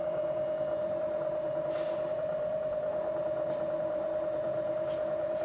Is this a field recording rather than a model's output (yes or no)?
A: no